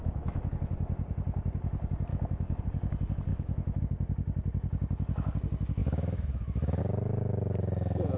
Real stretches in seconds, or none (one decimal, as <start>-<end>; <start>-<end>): 0.5-2.1; 2.6-3.3; 3.8-5.8; 6.8-8.2